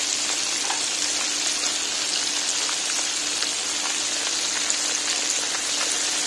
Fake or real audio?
real